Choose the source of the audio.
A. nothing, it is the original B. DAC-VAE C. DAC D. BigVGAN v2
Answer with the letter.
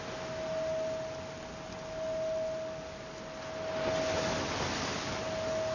A